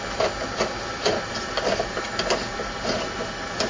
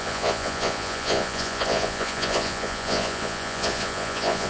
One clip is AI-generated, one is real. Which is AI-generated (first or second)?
second